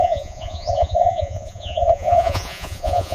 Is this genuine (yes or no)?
no